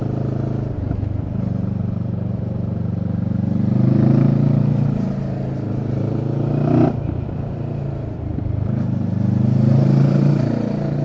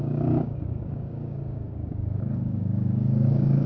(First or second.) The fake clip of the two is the second